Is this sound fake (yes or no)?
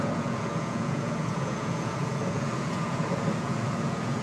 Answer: yes